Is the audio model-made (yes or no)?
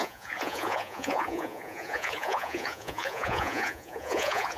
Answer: yes